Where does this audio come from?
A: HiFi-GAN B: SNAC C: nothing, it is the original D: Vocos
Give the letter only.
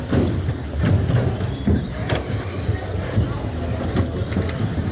C